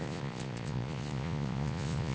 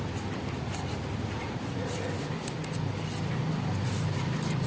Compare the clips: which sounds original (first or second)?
second